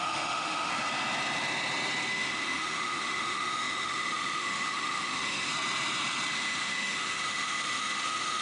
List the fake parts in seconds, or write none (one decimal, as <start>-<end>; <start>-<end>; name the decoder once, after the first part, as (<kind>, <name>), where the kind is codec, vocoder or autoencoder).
0.0-0.7 (autoencoder, DAC-VAE); 2.1-5.5; 6.3-8.4